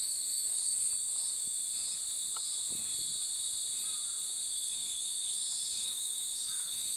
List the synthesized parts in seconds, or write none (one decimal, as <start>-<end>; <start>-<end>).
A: 0.0-0.9; 4.5-7.0